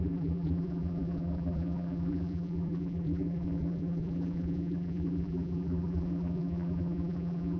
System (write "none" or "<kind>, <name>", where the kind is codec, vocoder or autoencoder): vocoder, BigVGAN v2